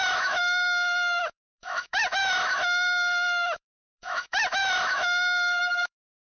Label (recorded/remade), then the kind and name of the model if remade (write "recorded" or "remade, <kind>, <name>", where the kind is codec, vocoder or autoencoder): remade, autoencoder, DAC-VAE